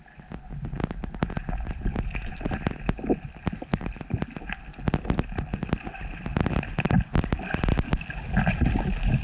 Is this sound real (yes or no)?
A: yes